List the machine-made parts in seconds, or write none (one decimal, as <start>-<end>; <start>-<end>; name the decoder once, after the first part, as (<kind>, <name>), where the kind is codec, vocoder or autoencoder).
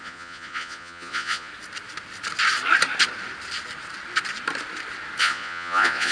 0.0-1.5 (vocoder, Vocos); 5.2-6.1